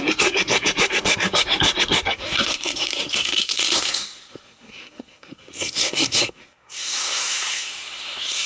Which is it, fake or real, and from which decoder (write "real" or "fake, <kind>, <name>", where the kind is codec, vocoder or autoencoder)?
fake, codec, SNAC